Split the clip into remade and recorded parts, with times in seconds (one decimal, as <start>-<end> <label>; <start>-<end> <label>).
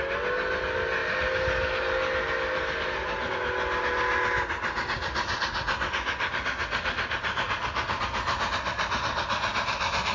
0.0-10.1 recorded